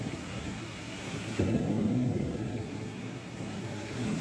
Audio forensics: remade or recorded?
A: remade